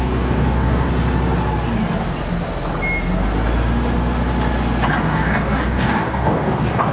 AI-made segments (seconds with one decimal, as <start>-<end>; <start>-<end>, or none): 0.0-0.9; 5.0-6.9